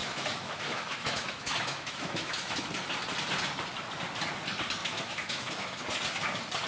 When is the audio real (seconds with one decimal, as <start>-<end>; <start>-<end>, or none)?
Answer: 2.7-4.8; 5.8-6.7